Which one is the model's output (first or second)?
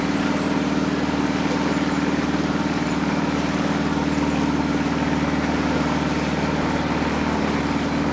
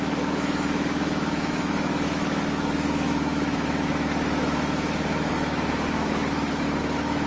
second